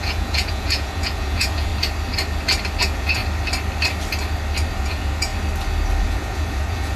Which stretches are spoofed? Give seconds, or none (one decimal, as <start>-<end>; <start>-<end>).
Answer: 0.0-1.7; 2.8-3.2; 4.7-5.3; 6.0-7.0